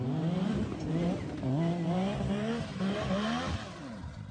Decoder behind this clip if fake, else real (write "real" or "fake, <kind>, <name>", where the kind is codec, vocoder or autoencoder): fake, vocoder, BigVGAN v2